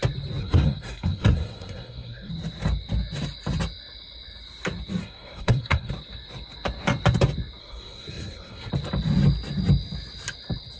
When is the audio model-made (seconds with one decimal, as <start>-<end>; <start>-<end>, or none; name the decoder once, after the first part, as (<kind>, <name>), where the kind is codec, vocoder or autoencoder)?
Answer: 0.4-2.3 (codec, SNAC); 5.0-5.9; 7.6-8.7